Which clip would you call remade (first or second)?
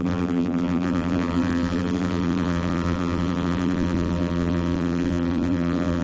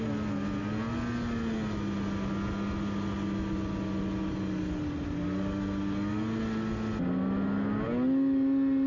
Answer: first